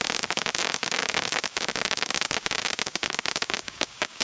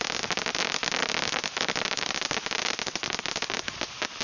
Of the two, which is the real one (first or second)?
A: second